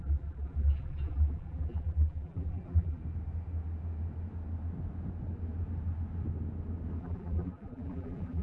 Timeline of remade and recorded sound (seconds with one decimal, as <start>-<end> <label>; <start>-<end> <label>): 0.0-3.0 remade; 3.0-7.0 recorded; 7.0-8.4 remade